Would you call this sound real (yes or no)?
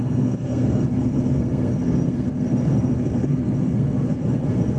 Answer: no